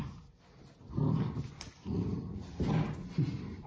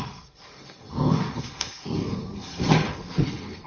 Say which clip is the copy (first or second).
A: second